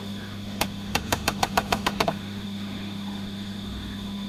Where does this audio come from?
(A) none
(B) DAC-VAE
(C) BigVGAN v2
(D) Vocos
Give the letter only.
B